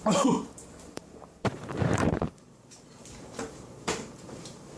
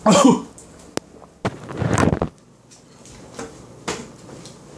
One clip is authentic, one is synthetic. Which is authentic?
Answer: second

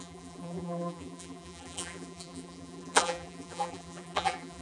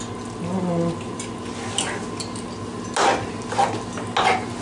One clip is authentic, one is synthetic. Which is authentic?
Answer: second